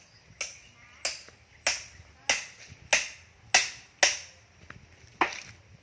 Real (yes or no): yes